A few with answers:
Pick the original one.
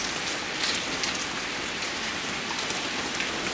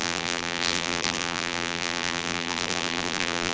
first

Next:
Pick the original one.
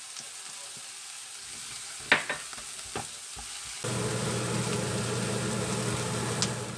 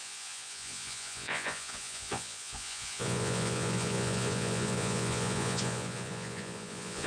first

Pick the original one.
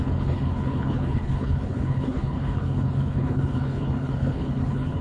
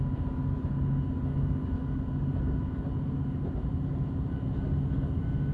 second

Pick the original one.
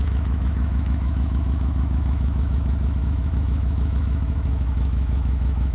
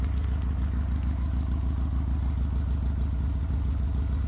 second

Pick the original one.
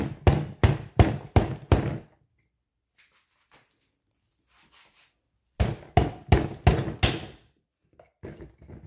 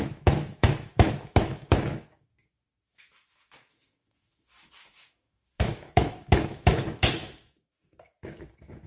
first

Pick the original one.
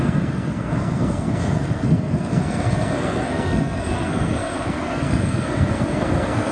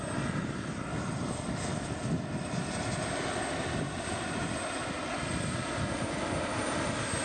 second